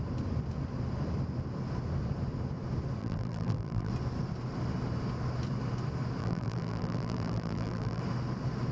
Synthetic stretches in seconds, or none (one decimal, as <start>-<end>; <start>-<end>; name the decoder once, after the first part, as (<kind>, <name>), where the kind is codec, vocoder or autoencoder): 3.0-3.9 (vocoder, BigVGAN v2); 6.2-8.0